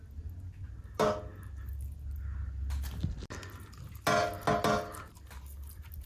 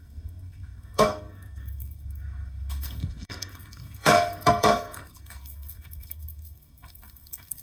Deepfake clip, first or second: second